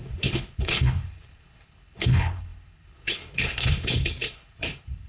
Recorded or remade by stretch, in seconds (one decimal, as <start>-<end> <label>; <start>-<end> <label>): 0.0-5.1 remade